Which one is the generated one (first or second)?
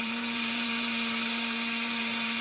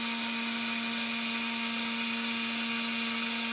first